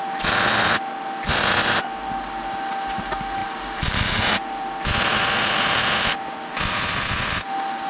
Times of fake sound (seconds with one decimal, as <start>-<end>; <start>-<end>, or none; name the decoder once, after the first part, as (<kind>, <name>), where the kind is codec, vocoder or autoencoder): 3.4-4.2 (vocoder, BigVGAN v2)